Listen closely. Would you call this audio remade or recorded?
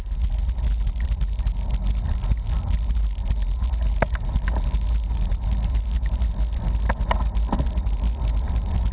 recorded